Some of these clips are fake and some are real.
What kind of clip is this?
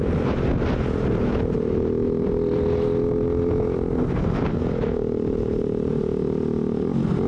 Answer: real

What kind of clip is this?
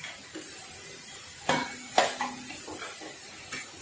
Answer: real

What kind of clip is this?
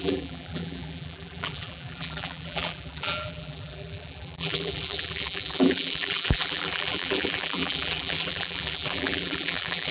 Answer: fake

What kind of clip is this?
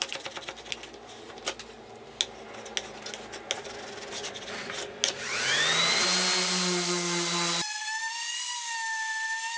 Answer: real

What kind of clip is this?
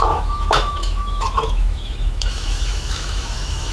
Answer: fake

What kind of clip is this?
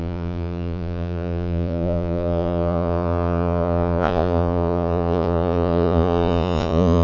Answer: fake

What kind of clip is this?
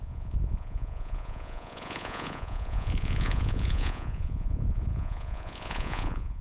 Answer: fake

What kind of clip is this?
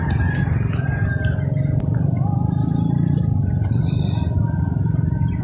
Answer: real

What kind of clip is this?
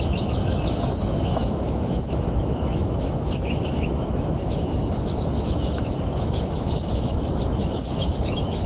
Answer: fake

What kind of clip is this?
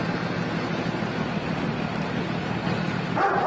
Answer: real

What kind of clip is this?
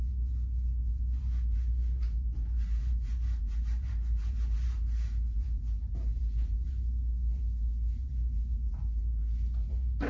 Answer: fake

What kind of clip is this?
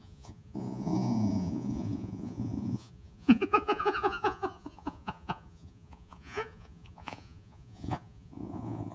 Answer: fake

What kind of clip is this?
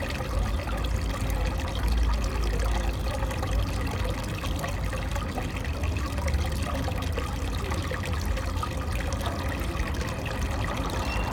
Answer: real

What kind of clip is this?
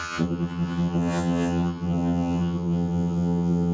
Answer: fake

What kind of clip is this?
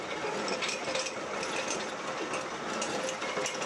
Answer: real